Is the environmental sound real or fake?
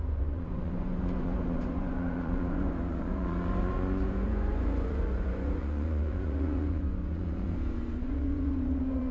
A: fake